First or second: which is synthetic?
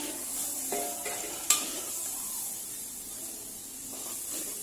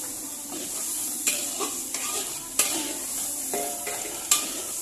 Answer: second